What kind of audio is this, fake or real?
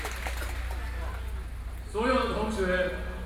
real